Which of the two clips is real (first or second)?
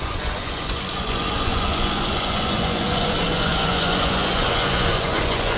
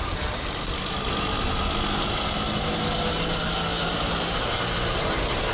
second